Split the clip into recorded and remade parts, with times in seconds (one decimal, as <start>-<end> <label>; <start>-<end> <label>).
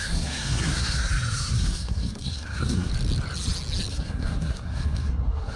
0.0-2.9 remade; 2.9-3.9 recorded; 3.9-5.6 remade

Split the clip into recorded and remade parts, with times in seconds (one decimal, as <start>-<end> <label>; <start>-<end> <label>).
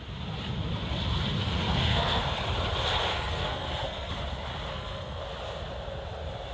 0.0-1.4 recorded; 1.4-2.2 remade; 2.2-3.1 recorded; 3.1-4.1 remade; 4.1-4.7 recorded; 4.7-5.2 remade; 5.2-6.5 recorded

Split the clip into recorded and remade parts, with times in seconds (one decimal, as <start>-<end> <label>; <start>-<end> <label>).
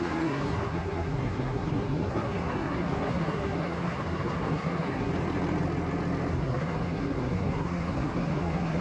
0.0-5.1 remade; 5.1-6.3 recorded; 6.3-8.8 remade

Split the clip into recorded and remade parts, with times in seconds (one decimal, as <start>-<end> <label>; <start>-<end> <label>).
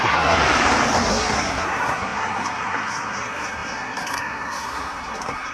0.0-0.4 remade; 0.4-1.1 recorded; 1.1-5.5 remade